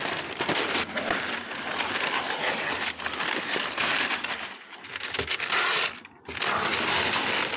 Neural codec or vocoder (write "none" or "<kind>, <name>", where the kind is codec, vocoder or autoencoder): none